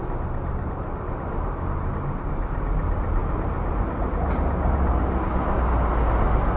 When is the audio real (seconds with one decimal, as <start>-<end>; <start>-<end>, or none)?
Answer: 0.0-6.6